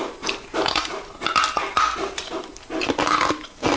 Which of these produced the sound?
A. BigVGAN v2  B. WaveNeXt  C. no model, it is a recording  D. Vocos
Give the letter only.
C